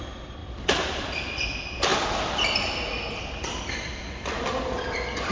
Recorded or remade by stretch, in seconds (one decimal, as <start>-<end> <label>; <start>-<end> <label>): 0.0-5.3 recorded